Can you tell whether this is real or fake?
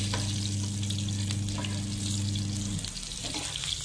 real